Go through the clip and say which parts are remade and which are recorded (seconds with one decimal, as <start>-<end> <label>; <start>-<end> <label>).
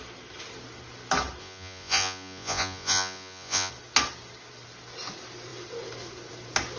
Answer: 0.0-1.4 recorded; 1.4-3.7 remade; 3.7-6.8 recorded